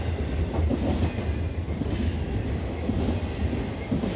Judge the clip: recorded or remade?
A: recorded